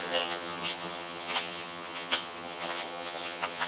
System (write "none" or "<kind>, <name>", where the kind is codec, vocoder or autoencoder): vocoder, HiFi-GAN